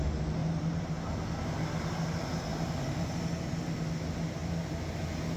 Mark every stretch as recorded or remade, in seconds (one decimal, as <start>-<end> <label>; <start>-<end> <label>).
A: 0.0-0.4 recorded; 0.4-0.9 remade; 0.9-2.5 recorded; 2.5-3.2 remade; 3.2-5.4 recorded